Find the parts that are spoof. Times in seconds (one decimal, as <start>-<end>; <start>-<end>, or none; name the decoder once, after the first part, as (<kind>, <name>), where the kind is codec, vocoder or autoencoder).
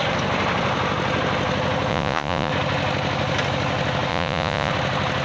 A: 1.9-2.5 (vocoder, Vocos); 4.1-4.7